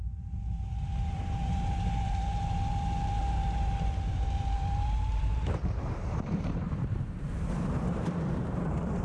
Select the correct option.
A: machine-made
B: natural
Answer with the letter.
A